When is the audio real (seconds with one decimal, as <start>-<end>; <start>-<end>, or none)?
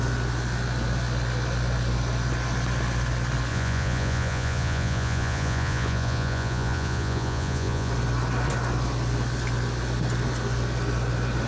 0.0-3.5; 7.9-11.5